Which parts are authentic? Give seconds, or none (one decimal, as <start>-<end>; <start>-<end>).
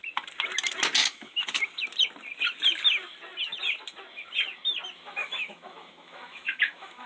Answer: 0.0-1.0; 1.6-5.2